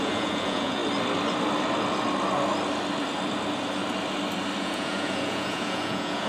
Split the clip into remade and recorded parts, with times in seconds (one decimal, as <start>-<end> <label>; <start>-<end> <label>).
0.0-0.8 remade; 0.8-4.6 recorded; 4.6-6.3 remade